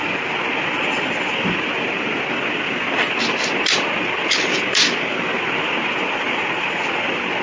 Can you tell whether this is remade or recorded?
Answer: recorded